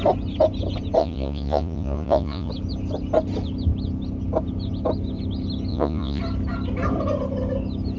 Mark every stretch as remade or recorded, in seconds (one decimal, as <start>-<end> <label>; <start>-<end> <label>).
0.0-1.0 recorded; 1.0-2.5 remade; 2.5-5.7 recorded; 5.7-6.2 remade; 6.2-8.0 recorded